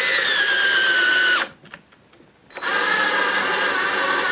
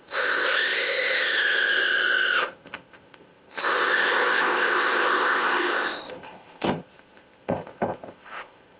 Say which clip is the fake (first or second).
second